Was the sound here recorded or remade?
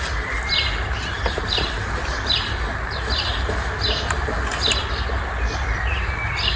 recorded